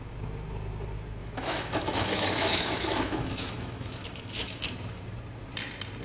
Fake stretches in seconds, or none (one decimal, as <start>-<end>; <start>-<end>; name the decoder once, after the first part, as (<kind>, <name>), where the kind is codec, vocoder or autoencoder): 1.2-4.7 (autoencoder, DAC-VAE)